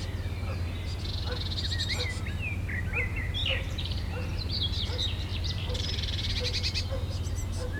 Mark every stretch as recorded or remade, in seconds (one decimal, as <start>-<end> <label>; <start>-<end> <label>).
0.0-3.4 recorded; 3.4-4.6 remade; 4.6-5.3 recorded; 5.3-6.3 remade; 6.3-7.8 recorded